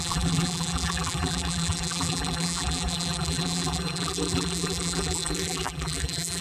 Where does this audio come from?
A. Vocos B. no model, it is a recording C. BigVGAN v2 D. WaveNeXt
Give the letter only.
C